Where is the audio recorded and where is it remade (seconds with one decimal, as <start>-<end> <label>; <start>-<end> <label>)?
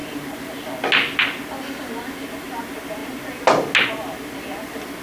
0.0-5.0 recorded